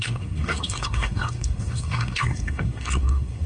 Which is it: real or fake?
fake